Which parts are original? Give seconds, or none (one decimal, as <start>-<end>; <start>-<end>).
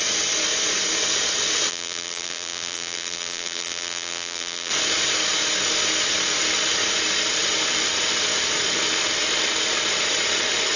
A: 0.0-1.7; 4.7-10.8